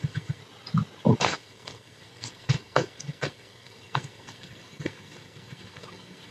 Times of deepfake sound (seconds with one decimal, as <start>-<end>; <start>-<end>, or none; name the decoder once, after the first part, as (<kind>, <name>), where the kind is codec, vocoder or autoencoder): 0.0-0.4 (codec, SNAC); 1.2-6.3